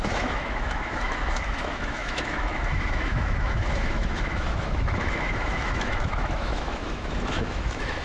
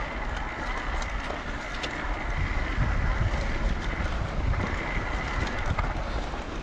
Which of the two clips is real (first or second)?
second